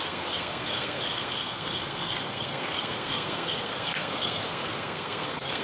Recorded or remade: remade